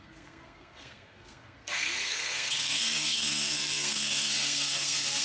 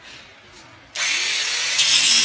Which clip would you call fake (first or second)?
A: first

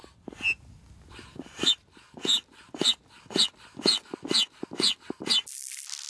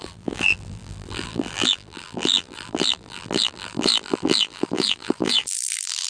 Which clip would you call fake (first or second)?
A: second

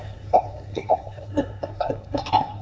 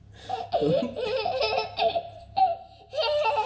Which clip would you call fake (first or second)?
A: first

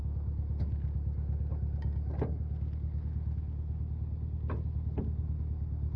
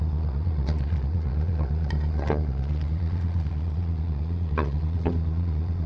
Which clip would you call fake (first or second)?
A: second